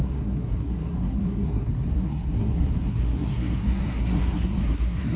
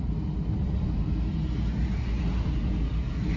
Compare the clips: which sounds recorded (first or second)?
second